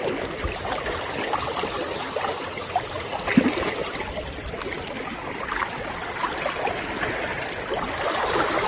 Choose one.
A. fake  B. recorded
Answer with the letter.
B